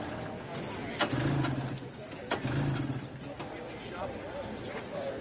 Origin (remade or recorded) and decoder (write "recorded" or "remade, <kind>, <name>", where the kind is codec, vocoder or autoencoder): recorded